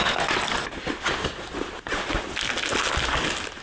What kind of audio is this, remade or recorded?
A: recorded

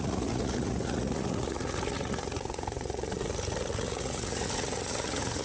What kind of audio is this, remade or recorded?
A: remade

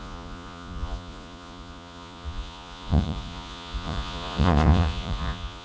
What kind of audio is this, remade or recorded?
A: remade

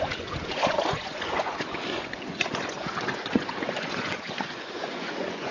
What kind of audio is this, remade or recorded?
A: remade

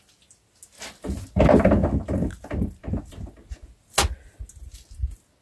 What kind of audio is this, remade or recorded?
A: recorded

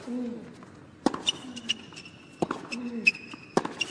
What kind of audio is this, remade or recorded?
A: recorded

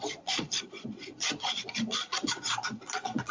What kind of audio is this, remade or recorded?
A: remade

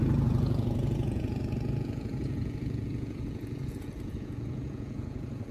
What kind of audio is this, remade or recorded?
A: remade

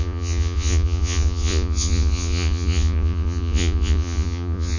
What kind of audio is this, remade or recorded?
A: remade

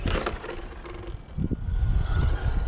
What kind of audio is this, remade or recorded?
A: recorded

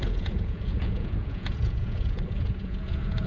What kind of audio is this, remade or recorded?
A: remade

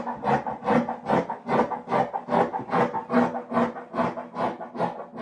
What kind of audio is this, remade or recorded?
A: recorded